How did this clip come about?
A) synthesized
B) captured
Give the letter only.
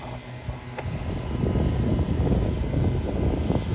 B